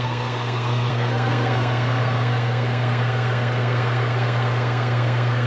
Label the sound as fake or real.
fake